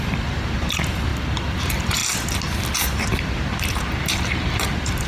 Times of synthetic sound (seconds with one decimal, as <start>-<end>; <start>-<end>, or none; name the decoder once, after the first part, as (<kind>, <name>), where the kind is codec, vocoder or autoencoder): 0.0-1.1 (vocoder, BigVGAN v2); 1.6-2.0; 2.8-5.1